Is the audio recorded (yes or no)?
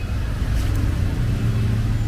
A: yes